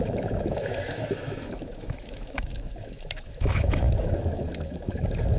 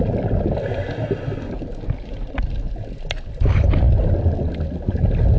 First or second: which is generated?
first